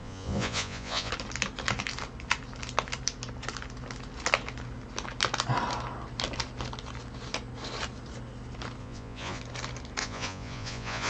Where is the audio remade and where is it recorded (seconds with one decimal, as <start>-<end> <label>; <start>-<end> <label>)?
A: 0.0-1.1 remade; 1.1-8.8 recorded; 8.8-9.4 remade; 9.4-10.0 recorded; 10.0-11.1 remade